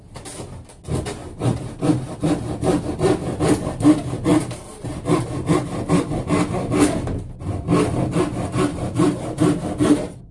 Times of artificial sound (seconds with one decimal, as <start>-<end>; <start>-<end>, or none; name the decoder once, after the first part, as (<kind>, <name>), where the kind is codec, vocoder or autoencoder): 1.2-2.8 (vocoder, BigVGAN v2); 4.3-5.2; 8.7-9.6